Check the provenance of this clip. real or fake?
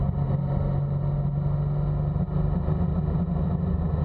real